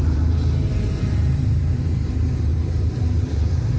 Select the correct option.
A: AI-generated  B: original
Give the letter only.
A